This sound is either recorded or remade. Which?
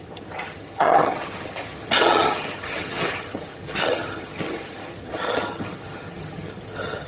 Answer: remade